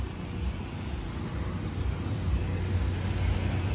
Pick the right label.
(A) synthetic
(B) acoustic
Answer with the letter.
B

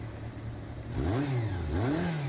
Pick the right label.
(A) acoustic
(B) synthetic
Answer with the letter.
A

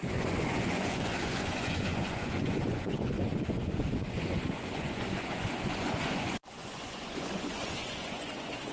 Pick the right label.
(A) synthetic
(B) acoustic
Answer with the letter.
A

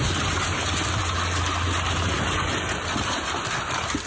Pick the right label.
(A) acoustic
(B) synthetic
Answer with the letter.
A